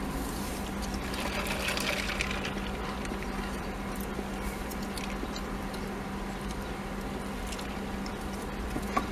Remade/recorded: recorded